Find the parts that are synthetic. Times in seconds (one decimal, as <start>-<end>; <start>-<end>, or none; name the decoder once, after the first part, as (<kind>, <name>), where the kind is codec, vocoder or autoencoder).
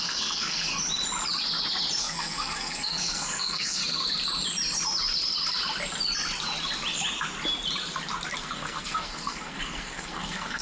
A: 0.0-0.7 (codec, SNAC); 2.0-3.8; 8.4-10.6